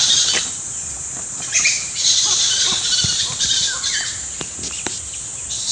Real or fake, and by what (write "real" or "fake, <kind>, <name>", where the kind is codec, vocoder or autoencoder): fake, vocoder, BigVGAN v2